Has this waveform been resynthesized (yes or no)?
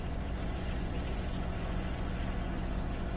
yes